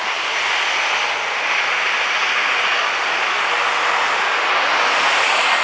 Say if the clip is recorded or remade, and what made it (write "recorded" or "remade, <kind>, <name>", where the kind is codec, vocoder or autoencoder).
recorded